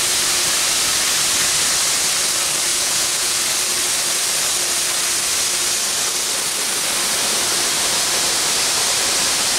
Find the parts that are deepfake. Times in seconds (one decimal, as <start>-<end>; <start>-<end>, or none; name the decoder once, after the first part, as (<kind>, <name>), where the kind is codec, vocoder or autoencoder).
2.7-3.4 (vocoder, Vocos)